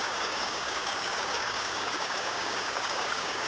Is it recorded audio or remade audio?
remade